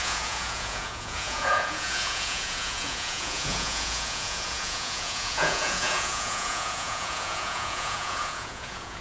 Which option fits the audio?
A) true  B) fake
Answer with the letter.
B